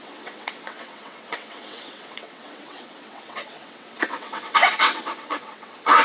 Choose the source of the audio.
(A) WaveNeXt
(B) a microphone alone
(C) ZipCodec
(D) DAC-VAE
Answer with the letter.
A